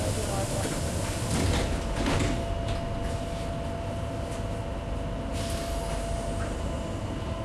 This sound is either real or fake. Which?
real